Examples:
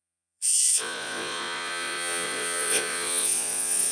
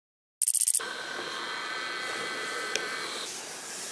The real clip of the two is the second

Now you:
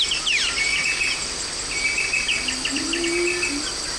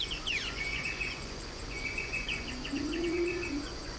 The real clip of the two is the first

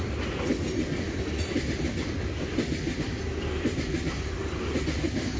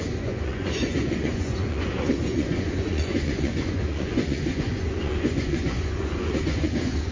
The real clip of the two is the first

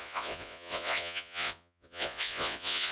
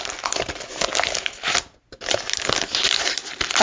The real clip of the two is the second